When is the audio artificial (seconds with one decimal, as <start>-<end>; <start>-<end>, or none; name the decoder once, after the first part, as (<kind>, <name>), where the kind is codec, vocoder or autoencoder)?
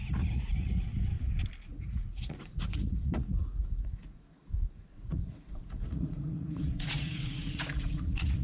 0.0-0.9 (vocoder, Vocos); 1.6-8.4